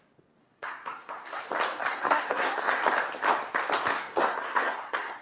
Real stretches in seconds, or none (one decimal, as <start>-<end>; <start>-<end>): 0.0-0.4; 1.4-1.8; 2.8-3.9